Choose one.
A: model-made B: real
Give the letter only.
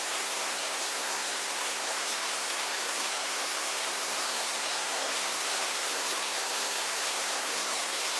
A